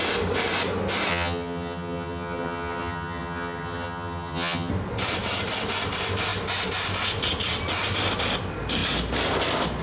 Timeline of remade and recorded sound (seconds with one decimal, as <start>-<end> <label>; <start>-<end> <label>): 0.0-1.1 recorded; 1.1-4.7 remade; 4.7-9.8 recorded